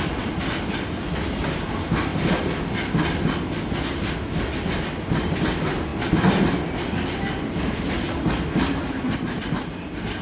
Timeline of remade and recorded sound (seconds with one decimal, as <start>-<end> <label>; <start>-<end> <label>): 0.0-10.2 recorded